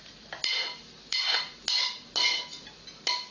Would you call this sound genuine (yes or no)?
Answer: yes